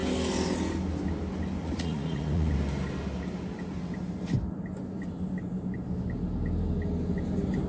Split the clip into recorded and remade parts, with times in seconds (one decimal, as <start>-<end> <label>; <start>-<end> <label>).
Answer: 0.0-1.6 recorded; 1.6-2.5 remade; 2.5-7.7 recorded